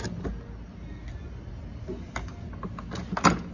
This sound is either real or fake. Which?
real